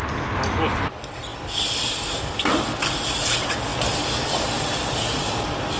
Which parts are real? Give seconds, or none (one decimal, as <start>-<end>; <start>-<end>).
0.0-5.8

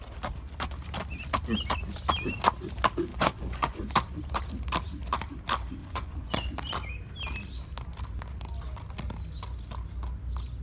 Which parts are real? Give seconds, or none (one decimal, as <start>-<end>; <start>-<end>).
0.0-3.1; 3.9-5.8; 6.5-10.6

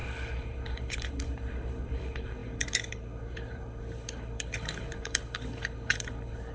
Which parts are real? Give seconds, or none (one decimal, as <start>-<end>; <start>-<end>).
none

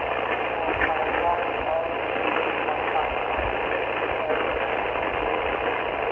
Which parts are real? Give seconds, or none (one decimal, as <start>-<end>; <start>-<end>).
0.0-6.1

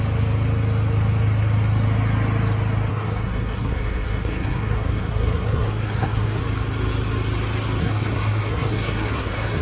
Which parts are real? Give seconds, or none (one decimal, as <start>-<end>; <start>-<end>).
0.0-2.9; 6.4-7.8

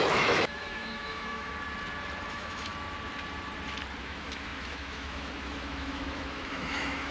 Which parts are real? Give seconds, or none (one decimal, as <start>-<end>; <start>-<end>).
1.5-2.3; 2.7-4.0

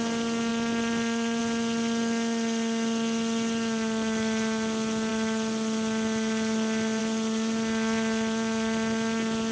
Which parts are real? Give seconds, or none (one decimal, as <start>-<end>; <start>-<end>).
0.0-0.5; 1.4-9.5